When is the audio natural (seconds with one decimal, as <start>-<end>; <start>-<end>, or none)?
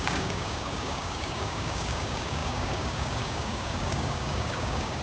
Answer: none